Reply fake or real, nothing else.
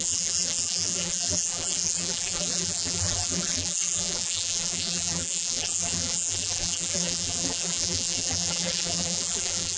fake